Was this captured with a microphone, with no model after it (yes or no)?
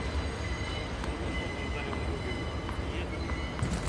yes